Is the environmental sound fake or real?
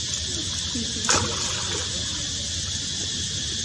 real